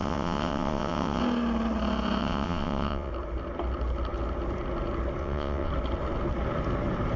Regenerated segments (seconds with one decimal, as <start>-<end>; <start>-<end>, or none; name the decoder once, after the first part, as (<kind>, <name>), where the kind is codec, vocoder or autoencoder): 0.0-1.2 (vocoder, WaveNeXt); 2.2-3.1; 5.2-5.7